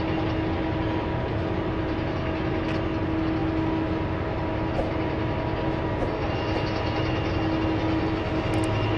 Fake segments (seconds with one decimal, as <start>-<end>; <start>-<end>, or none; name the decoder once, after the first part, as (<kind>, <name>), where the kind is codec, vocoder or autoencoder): none